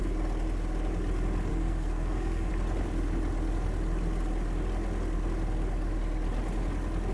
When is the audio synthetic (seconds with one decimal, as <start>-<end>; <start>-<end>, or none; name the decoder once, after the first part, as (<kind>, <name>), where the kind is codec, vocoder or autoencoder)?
1.5-2.5 (codec, SNAC)